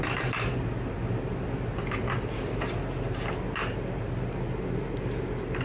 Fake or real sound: real